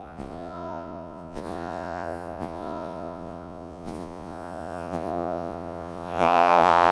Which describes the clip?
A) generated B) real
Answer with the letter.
A